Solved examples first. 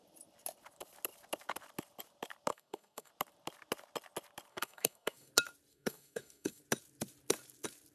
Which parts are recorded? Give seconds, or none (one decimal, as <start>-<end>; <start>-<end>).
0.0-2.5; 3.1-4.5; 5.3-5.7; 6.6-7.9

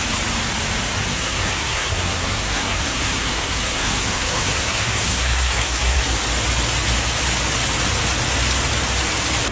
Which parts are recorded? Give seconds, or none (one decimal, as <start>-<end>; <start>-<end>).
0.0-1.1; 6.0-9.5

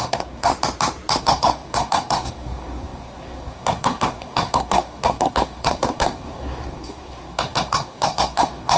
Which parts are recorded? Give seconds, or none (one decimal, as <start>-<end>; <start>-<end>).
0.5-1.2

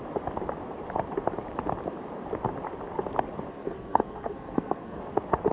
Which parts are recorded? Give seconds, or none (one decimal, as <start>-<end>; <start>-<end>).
0.0-3.5; 5.0-5.5